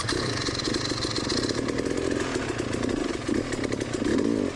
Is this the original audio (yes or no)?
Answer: yes